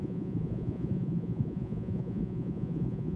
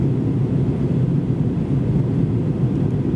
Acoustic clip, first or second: second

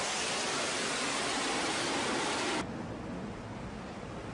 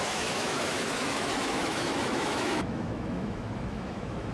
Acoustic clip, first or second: first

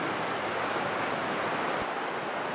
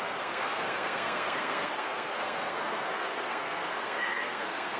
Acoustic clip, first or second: first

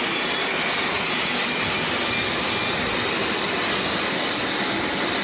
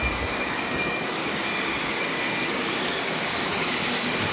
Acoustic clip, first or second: first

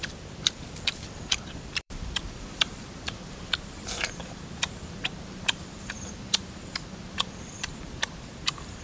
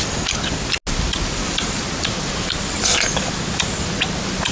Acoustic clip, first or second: second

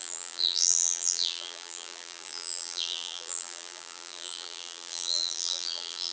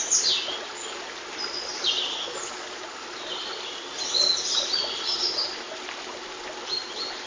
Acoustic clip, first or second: second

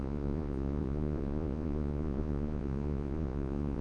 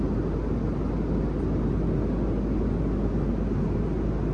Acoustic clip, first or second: second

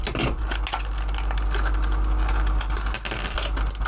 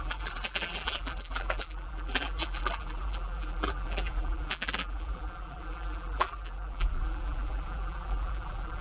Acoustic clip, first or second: first